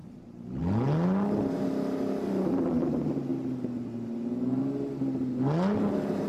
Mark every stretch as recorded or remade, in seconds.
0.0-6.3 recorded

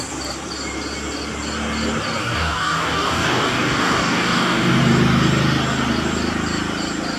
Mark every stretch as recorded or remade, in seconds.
0.0-2.2 recorded; 2.2-4.8 remade; 4.8-7.2 recorded

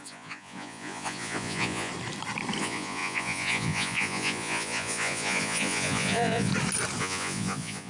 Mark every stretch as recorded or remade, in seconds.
0.0-1.9 remade; 1.9-2.6 recorded; 2.6-6.5 remade; 6.5-7.0 recorded; 7.0-7.9 remade

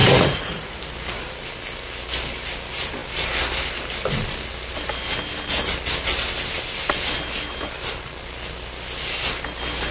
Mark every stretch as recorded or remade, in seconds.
0.0-0.8 remade; 0.8-9.9 recorded

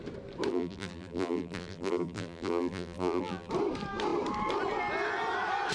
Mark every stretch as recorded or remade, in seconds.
0.0-0.5 recorded; 0.5-3.5 remade; 3.5-5.7 recorded